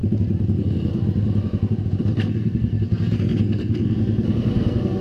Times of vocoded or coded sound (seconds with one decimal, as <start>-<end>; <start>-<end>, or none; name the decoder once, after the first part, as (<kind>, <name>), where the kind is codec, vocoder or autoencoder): 0.6-1.0 (codec, SNAC); 2.0-5.0